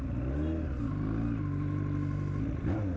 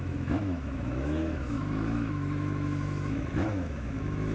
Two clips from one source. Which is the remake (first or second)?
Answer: second